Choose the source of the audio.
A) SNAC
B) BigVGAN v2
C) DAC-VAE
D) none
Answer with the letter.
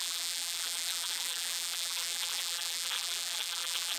B